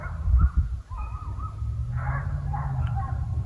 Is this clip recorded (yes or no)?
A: yes